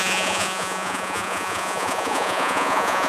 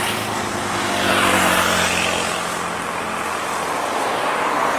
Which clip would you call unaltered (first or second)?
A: second